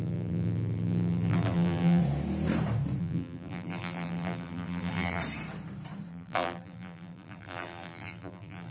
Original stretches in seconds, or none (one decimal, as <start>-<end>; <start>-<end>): 2.0-3.0; 5.2-6.1